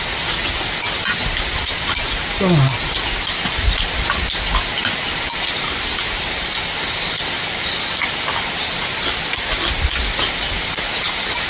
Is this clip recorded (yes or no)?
yes